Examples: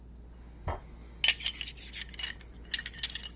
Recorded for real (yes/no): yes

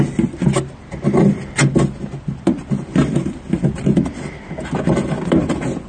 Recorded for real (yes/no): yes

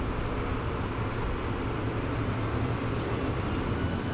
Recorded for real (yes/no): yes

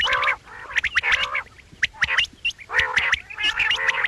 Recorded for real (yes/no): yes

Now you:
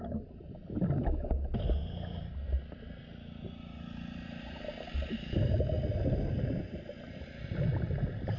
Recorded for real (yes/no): yes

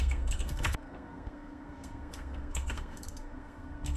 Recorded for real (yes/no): no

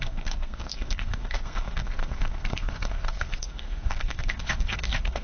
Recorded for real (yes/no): no